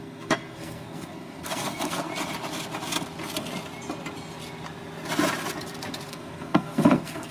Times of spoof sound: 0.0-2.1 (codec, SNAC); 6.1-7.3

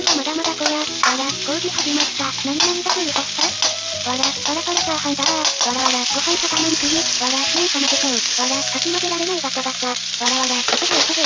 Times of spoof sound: 0.7-2.6 (vocoder, BigVGAN v2); 6.6-10.8

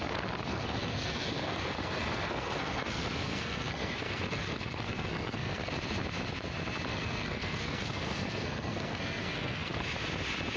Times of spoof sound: 0.5-5.7 (codec, SNAC); 6.9-9.8

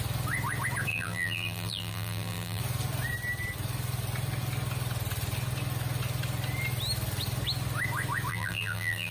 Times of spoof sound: 0.9-2.6 (vocoder, BigVGAN v2); 8.3-9.1

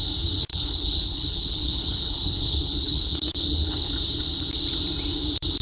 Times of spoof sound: 0.5-3.9 (codec, HILCodec)

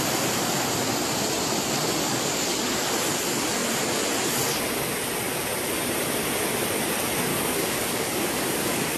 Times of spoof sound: 2.0-2.6 (codec, DAC); 7.3-9.0

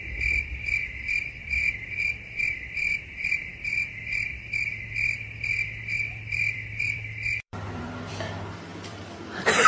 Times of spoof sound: 0.0-1.4 (vocoder, BigVGAN v2); 2.4-9.7